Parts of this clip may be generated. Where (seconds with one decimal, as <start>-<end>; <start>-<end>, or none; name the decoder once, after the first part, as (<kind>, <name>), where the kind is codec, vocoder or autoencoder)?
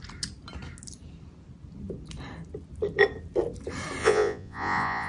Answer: 4.0-5.1 (vocoder, Vocos)